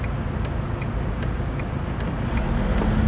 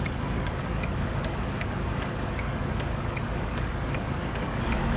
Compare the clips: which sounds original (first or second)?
first